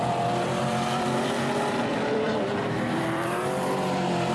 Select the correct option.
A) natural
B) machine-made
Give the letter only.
B